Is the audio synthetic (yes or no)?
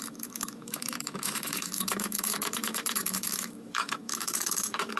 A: yes